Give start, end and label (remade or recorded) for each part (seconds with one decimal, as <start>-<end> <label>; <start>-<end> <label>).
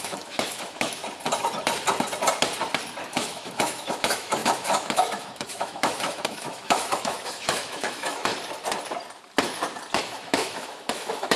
0.0-1.0 remade; 1.0-3.1 recorded; 3.1-8.3 remade; 8.3-10.0 recorded; 10.0-11.4 remade